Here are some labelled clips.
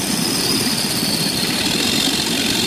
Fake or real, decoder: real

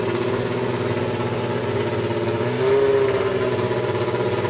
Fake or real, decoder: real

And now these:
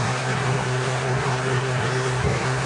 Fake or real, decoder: fake, codec, SNAC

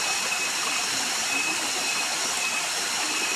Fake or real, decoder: real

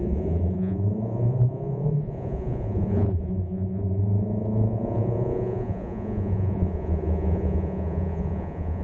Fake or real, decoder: fake, vocoder, Vocos